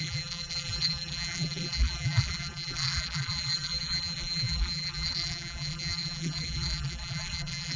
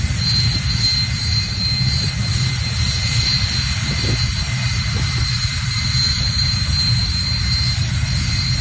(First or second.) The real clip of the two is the second